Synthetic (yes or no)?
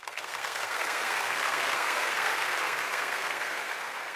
yes